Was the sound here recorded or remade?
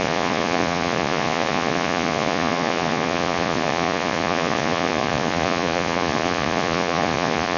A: remade